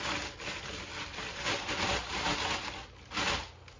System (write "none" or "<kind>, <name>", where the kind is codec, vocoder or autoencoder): none